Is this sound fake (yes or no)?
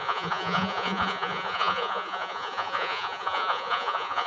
yes